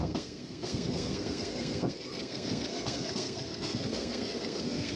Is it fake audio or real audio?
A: fake